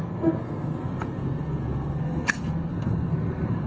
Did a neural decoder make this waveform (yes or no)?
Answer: yes